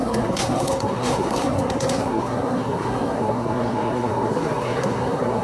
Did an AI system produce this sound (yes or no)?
yes